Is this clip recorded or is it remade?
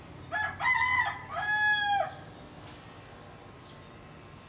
recorded